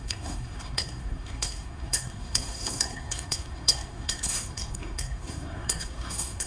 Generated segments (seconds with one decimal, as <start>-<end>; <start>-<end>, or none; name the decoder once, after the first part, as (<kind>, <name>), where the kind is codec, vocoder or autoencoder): 0.0-6.5 (codec, SNAC)